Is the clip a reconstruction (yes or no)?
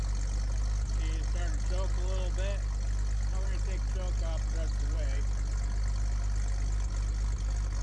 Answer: no